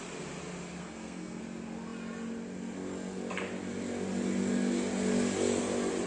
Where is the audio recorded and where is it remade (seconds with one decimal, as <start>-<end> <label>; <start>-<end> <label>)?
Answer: 0.0-0.8 recorded; 0.8-1.4 remade; 1.4-6.1 recorded